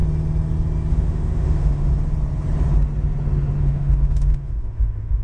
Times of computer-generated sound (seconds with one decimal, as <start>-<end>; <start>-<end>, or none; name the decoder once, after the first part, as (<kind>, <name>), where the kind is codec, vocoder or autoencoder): 0.9-1.9 (autoencoder, DAC-VAE); 3.6-5.2